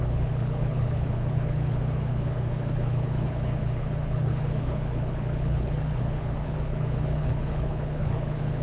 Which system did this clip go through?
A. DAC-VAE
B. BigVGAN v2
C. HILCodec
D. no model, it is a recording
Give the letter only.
C